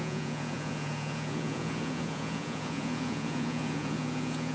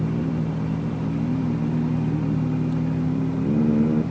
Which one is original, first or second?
second